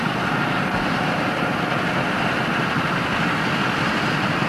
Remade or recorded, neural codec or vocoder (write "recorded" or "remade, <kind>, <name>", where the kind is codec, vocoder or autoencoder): recorded